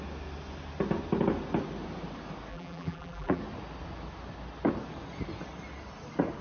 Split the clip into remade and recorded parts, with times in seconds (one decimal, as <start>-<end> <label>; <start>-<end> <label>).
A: 0.0-2.5 recorded; 2.5-3.4 remade; 3.4-6.4 recorded